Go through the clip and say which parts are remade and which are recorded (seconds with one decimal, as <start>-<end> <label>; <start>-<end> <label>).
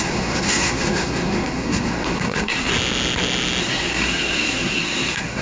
0.0-2.7 remade; 2.7-3.6 recorded; 3.6-5.4 remade